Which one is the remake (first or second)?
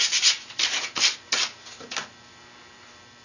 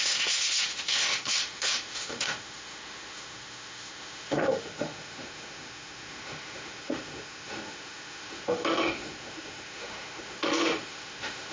second